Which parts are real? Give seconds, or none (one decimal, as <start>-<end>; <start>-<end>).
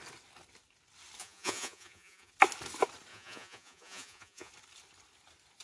0.0-1.2; 2.3-3.1; 4.5-5.6